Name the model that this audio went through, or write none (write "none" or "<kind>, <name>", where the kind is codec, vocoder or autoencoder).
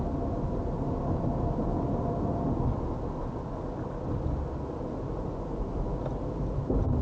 none